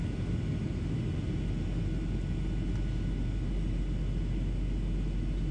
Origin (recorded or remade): recorded